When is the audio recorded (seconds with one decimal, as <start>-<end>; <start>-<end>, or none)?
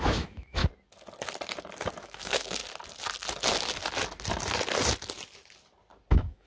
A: 0.6-2.0; 2.6-6.1